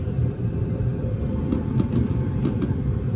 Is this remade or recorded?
remade